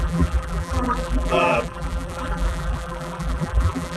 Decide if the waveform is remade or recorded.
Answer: remade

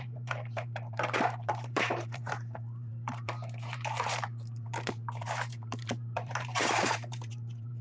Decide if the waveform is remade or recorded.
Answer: remade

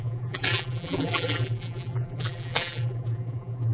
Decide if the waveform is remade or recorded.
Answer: remade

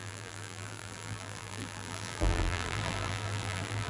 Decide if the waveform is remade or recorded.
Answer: remade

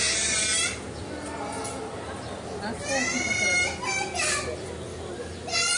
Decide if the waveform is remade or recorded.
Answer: recorded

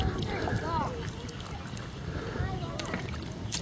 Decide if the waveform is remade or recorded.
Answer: remade